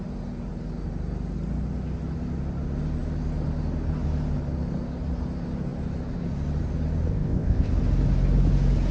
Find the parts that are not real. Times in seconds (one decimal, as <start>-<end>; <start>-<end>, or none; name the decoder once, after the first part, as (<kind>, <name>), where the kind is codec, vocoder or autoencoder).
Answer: 7.1-7.7 (codec, ZipCodec)